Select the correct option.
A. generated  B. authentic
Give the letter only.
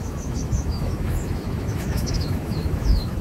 A